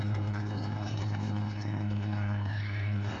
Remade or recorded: remade